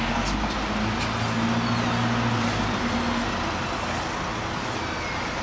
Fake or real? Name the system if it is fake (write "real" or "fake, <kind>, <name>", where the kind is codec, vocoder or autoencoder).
real